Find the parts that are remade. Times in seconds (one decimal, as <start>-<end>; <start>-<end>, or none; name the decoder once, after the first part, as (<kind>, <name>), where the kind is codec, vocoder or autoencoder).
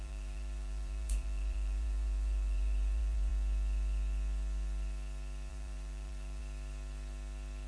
0.0-3.3 (vocoder, BigVGAN v2); 5.5-6.4